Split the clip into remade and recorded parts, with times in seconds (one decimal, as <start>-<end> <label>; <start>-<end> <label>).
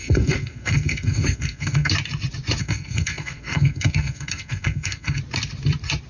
0.0-1.9 remade; 1.9-2.6 recorded; 2.6-5.2 remade; 5.2-6.1 recorded